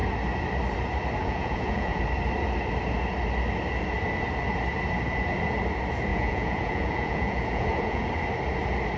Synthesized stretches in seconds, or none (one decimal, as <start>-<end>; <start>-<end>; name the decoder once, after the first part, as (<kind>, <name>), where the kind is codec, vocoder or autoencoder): 1.2-2.0 (vocoder, Vocos); 6.1-8.1